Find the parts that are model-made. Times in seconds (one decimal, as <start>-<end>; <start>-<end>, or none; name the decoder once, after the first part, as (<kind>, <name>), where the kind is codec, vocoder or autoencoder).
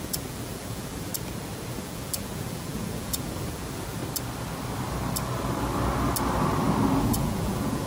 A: 0.0-1.1 (vocoder, BigVGAN v2); 1.7-4.0; 7.0-7.9